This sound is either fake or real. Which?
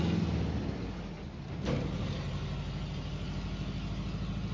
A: real